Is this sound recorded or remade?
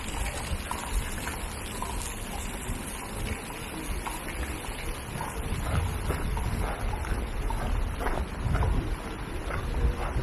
recorded